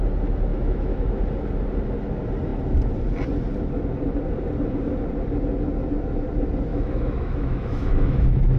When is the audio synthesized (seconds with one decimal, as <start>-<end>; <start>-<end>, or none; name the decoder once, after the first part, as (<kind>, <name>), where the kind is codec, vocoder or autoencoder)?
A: 0.5-1.0 (autoencoder, DAC-VAE); 6.7-8.6